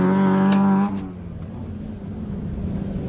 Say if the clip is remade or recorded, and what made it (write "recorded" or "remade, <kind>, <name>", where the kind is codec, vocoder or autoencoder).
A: recorded